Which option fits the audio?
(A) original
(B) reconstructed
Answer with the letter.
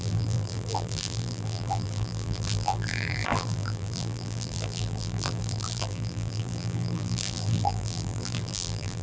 B